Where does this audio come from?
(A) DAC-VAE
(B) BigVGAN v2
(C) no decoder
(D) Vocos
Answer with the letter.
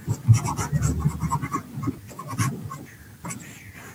B